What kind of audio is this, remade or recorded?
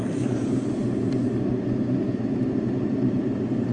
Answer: recorded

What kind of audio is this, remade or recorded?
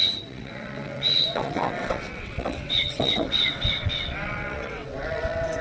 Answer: remade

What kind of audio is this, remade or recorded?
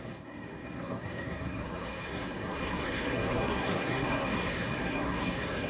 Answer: remade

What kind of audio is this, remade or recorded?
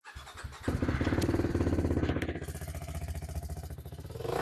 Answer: recorded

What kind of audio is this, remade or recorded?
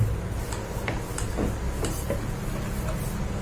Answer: recorded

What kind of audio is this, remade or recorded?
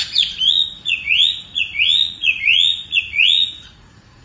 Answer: remade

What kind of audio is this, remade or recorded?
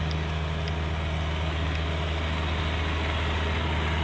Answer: recorded